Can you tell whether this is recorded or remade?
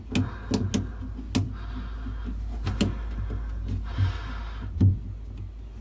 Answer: recorded